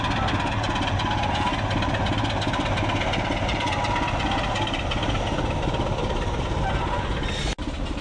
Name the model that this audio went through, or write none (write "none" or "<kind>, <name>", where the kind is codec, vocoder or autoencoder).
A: none